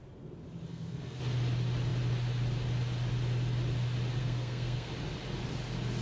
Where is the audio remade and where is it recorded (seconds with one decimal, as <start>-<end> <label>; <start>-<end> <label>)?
0.0-0.7 recorded; 0.7-1.2 remade; 1.2-4.2 recorded; 4.2-4.9 remade; 4.9-6.0 recorded